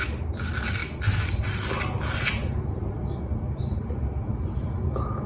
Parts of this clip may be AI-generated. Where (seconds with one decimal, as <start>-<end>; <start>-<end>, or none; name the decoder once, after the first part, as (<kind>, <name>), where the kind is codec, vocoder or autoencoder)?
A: none